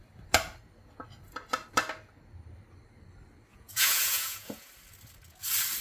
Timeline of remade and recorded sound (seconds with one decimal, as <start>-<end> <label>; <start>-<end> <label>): 0.0-3.5 recorded; 3.5-4.7 remade; 4.7-5.8 recorded